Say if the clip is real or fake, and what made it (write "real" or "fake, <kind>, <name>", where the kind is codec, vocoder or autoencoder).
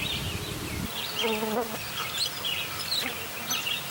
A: real